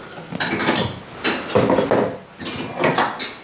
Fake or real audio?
real